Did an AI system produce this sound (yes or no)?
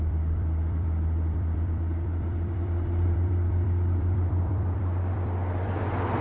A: yes